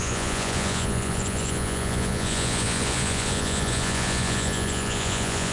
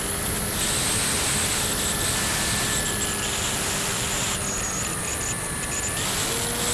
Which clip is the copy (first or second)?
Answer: first